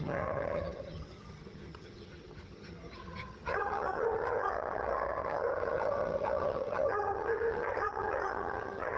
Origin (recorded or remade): remade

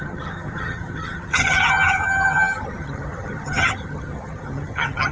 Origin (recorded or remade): remade